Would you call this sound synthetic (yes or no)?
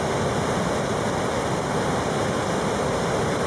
no